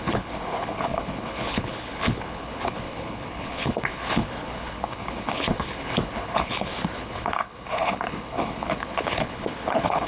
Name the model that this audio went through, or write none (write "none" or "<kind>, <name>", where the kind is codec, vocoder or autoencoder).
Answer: codec, HILCodec